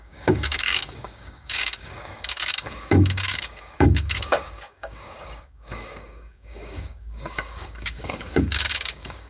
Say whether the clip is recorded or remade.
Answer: remade